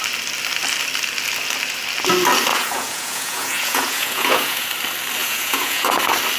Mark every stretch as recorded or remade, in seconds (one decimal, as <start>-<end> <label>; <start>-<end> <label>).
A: 0.0-2.5 recorded; 2.5-4.7 remade; 4.7-5.2 recorded; 5.2-6.0 remade; 6.0-6.4 recorded